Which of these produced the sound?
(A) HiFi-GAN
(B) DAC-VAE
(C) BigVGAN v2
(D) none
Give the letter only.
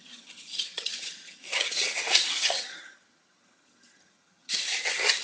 A